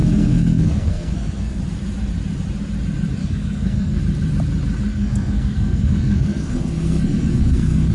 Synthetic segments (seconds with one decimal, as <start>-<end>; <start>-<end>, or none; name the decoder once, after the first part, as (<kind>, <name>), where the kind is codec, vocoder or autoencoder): 0.0-1.6 (codec, SNAC); 3.2-4.0; 4.9-7.9